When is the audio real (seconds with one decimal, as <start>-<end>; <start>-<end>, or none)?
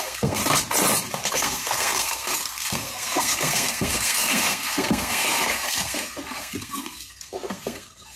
0.4-1.3